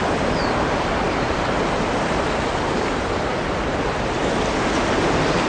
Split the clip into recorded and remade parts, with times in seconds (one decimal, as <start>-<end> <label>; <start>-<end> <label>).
0.0-5.5 recorded